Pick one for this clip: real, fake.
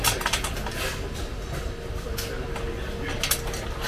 real